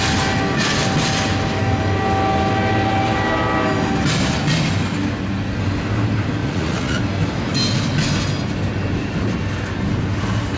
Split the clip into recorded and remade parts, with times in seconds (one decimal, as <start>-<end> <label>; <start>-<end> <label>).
0.0-6.4 recorded; 6.4-7.0 remade; 7.0-10.6 recorded